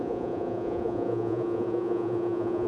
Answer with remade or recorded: remade